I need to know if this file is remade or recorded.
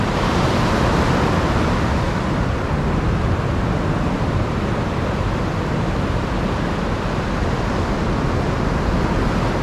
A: recorded